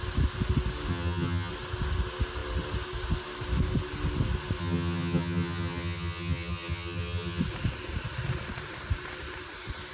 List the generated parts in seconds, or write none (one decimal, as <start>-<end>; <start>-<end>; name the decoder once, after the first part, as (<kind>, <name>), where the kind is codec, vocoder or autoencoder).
0.9-1.5 (vocoder, HiFi-GAN); 4.6-7.4